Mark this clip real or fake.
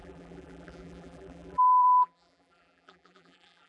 fake